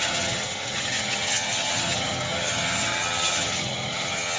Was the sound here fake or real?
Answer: fake